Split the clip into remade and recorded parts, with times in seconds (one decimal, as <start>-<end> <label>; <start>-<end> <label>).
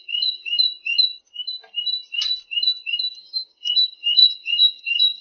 0.0-0.6 remade; 0.6-3.2 recorded; 3.2-5.2 remade